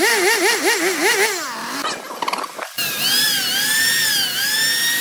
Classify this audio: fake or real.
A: real